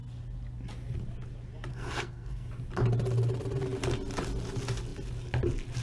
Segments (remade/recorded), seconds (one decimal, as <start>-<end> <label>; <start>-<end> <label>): 0.0-1.7 recorded; 1.7-2.5 remade; 2.5-5.8 recorded